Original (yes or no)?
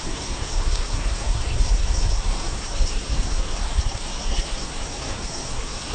no